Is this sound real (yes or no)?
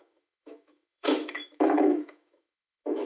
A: no